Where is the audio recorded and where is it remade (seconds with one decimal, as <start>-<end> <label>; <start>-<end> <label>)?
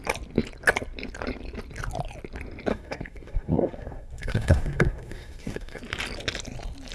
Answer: 0.0-2.7 recorded; 2.7-5.8 remade; 5.8-6.9 recorded